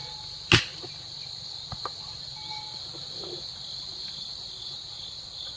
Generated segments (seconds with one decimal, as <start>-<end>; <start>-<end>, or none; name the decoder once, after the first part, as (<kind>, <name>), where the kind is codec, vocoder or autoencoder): none